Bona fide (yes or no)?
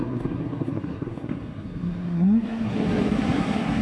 no